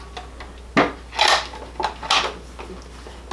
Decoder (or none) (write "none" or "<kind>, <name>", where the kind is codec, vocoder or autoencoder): none